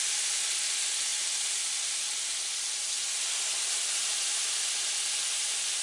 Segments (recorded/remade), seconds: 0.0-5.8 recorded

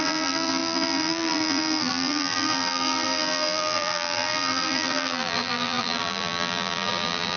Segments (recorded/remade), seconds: 0.0-7.4 remade

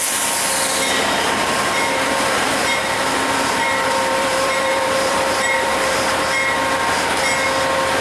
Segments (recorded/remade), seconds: 0.0-1.4 recorded; 1.4-6.2 remade; 6.2-8.0 recorded

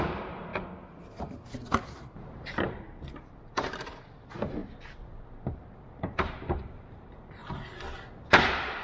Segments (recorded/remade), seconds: 0.0-0.5 remade; 0.5-2.0 recorded; 2.0-4.6 remade; 4.6-5.5 recorded; 5.5-7.4 remade; 7.4-8.3 recorded; 8.3-8.8 remade